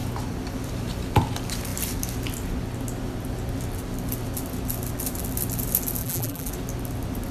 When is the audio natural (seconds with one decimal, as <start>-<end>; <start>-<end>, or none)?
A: 0.0-6.0; 6.5-7.3